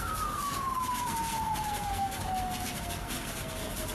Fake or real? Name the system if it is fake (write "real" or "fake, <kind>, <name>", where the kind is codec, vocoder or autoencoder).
fake, codec, SNAC